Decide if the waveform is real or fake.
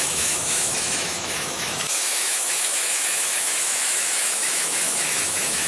fake